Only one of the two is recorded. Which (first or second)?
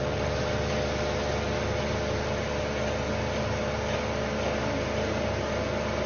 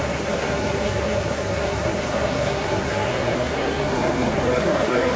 first